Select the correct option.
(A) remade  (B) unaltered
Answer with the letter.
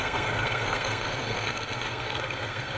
A